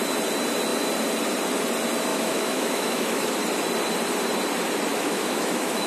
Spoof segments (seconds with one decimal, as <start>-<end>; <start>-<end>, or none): 2.1-3.3; 4.9-5.9